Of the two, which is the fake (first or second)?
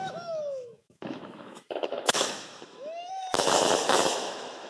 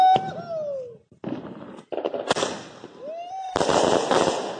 first